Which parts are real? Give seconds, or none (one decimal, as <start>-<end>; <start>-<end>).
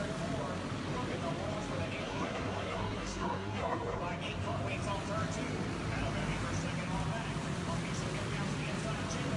0.0-2.0; 4.0-9.4